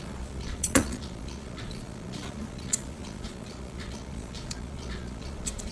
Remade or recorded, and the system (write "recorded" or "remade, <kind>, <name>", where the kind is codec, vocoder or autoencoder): remade, vocoder, Vocos